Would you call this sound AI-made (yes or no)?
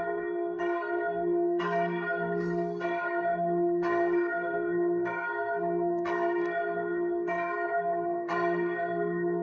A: yes